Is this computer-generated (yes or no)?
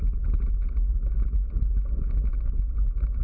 no